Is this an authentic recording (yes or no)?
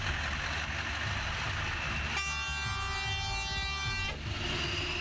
yes